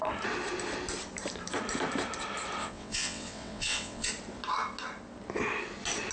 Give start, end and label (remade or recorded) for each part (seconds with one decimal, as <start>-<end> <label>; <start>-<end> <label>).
0.0-2.6 recorded; 2.6-4.1 remade; 4.1-6.1 recorded